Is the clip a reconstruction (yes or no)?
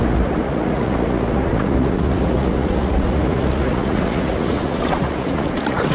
yes